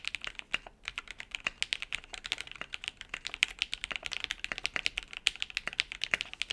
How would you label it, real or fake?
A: real